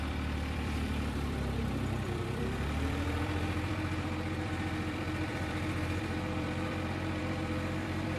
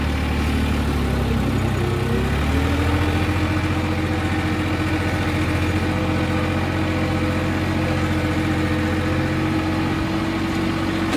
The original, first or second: second